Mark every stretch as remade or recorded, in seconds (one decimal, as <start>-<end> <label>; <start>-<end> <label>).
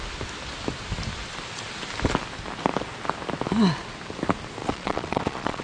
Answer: 0.0-4.6 recorded; 4.6-5.6 remade